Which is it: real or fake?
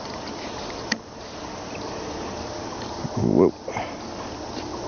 real